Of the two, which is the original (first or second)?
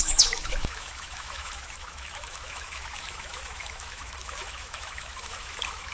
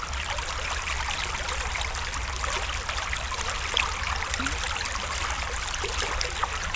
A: second